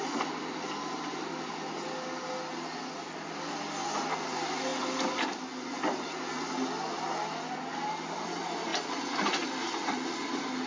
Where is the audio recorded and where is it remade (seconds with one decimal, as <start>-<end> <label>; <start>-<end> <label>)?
0.0-10.7 recorded